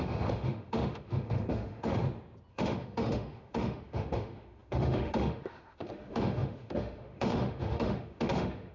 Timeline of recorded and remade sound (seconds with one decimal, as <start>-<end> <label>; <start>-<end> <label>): 0.0-2.0 remade; 2.0-2.5 recorded; 2.5-8.7 remade